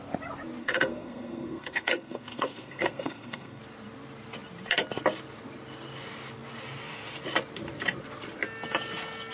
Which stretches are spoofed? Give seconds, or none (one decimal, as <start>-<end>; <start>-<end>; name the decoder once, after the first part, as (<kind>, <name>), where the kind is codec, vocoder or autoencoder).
0.6-3.6 (codec, SNAC)